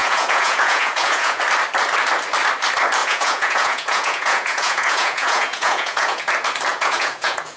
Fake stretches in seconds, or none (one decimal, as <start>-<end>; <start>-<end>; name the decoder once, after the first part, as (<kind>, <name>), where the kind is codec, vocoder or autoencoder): 0.0-1.4 (vocoder, Vocos); 3.0-6.2; 6.7-7.6